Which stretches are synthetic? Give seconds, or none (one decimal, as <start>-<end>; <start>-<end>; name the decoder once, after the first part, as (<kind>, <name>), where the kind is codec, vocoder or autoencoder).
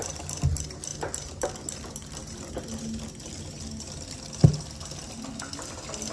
none